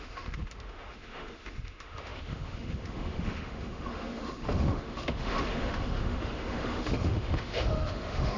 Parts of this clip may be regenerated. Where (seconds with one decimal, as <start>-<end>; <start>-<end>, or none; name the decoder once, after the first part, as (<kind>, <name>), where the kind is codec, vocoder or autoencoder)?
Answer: 0.0-8.4 (autoencoder, DAC-VAE)